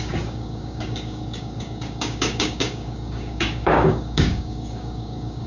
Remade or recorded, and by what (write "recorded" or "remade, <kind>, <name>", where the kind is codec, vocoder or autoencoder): remade, codec, DAC